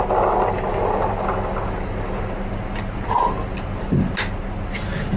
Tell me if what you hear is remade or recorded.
recorded